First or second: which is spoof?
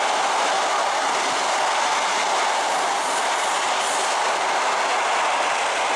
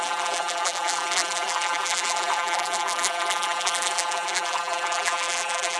second